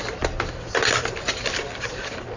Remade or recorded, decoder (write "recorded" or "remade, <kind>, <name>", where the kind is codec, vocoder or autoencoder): recorded